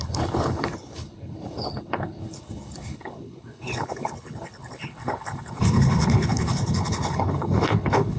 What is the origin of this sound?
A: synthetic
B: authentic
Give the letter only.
A